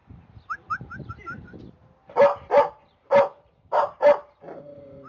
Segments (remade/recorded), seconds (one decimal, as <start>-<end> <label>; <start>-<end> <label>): 0.0-2.7 recorded; 2.7-5.1 remade